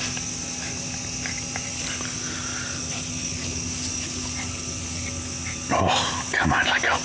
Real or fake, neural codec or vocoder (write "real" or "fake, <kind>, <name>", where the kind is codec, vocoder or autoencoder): real